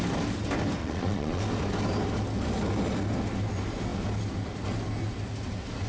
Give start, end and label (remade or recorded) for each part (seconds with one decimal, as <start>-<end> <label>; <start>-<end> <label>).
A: 0.0-0.8 recorded; 0.8-1.4 remade; 1.4-5.9 recorded